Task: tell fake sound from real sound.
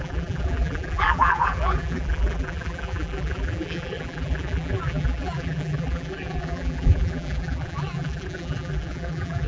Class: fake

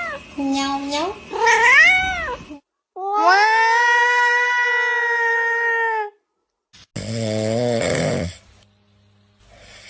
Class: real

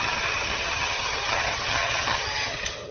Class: fake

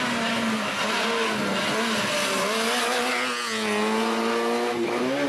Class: real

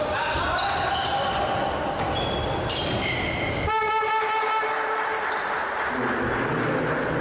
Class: real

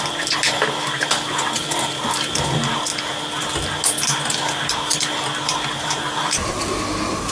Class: real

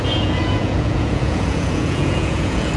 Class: fake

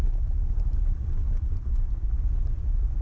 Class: real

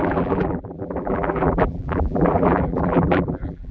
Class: fake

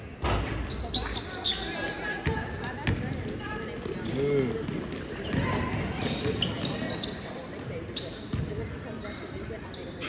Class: real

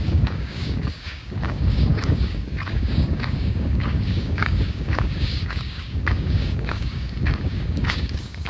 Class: fake